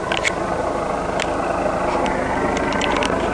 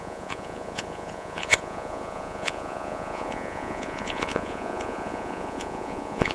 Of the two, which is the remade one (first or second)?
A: second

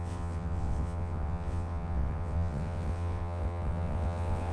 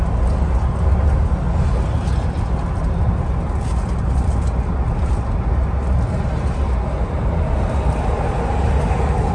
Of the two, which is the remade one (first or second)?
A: first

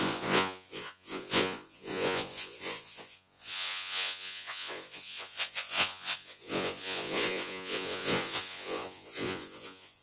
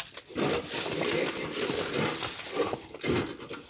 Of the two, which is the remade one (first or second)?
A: first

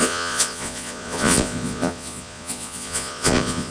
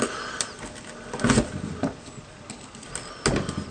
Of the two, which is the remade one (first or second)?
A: first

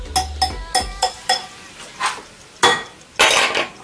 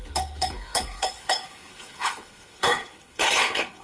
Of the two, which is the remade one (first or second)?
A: second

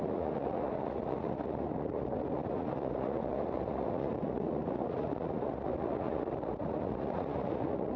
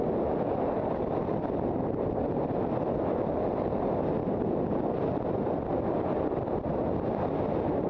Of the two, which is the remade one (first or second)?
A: first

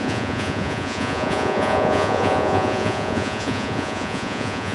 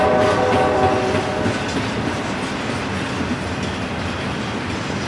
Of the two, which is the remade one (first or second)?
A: first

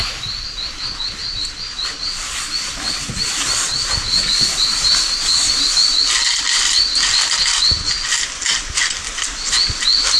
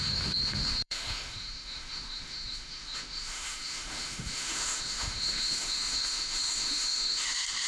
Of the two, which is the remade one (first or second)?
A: second